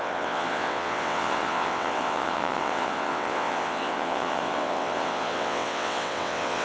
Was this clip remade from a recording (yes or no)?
yes